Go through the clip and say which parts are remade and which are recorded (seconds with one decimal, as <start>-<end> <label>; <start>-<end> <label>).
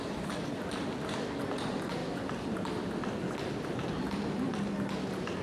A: 0.0-5.4 recorded